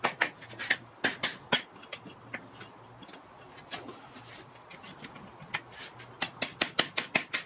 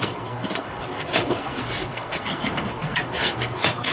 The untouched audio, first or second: first